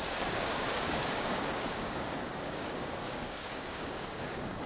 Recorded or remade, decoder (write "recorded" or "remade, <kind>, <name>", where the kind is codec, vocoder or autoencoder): remade, codec, DAC